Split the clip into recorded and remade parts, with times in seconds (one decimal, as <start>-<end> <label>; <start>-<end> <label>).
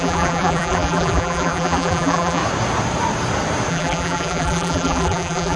0.0-2.4 remade; 2.4-3.7 recorded; 3.7-5.6 remade